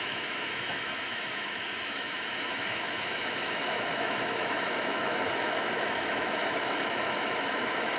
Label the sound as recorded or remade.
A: remade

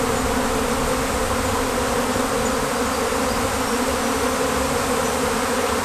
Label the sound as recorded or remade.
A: recorded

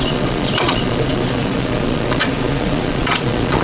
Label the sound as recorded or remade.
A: remade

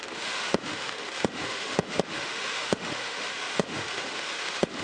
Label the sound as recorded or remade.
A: remade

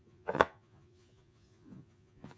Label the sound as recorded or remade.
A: remade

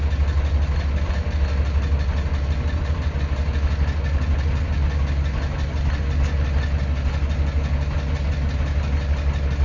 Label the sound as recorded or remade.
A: recorded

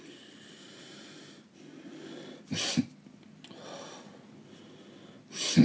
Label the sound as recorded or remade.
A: recorded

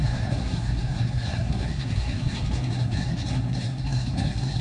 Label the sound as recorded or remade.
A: remade